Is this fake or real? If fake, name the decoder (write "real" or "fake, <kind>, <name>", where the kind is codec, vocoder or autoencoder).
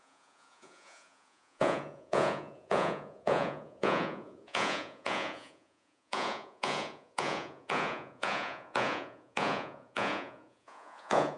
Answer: fake, vocoder, Vocos